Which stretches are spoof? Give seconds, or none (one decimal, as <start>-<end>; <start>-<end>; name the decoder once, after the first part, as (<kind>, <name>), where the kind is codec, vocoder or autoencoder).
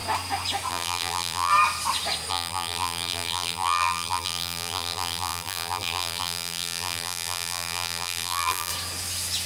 0.7-1.5 (vocoder, BigVGAN v2); 2.3-8.7